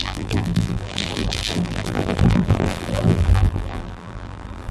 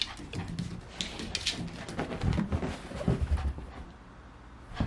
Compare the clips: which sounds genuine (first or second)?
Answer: second